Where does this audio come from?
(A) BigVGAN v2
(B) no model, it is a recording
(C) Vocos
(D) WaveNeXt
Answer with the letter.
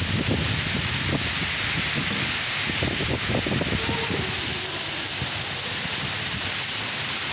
B